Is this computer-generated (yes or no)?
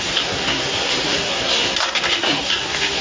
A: yes